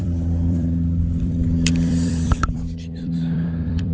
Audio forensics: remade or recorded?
remade